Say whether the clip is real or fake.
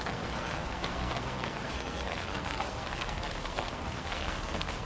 fake